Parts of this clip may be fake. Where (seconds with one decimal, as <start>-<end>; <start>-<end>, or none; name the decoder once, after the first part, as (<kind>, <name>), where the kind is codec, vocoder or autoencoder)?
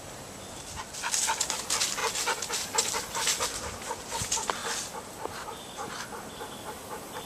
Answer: none